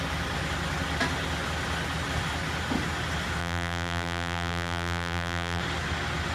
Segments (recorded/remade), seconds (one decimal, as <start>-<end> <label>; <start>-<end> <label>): 0.0-3.4 recorded; 3.4-5.6 remade; 5.6-6.3 recorded